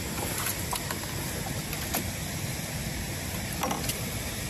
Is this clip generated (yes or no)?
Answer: no